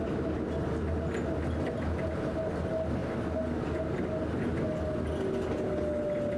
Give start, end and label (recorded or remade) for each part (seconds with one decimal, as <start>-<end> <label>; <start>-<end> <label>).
0.0-6.4 recorded